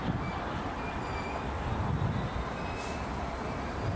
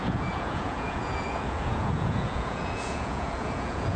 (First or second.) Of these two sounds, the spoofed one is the second